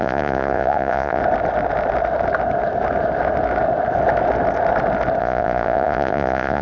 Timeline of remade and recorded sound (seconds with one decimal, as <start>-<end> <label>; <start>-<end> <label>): 0.0-1.2 remade; 1.2-5.2 recorded; 5.2-6.6 remade